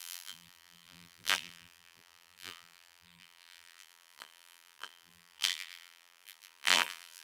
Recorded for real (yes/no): no